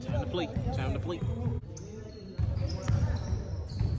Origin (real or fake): real